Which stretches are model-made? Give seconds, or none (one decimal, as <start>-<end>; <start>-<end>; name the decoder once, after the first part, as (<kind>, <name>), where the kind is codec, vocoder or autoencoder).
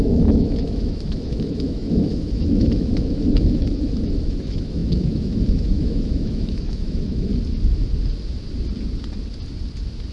0.0-7.3 (autoencoder, DAC-VAE)